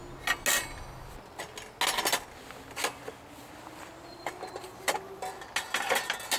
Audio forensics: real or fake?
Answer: real